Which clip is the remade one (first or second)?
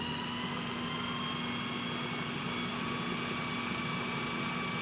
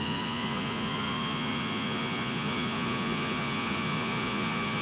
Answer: second